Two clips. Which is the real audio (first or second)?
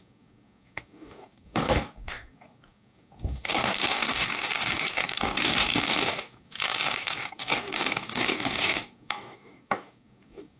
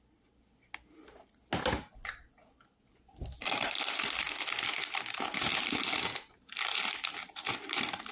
second